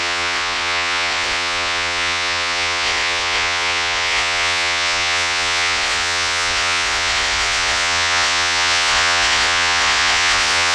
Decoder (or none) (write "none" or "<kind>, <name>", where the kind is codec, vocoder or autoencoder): vocoder, Vocos